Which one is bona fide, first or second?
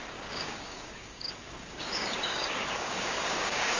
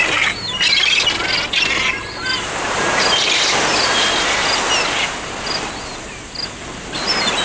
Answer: second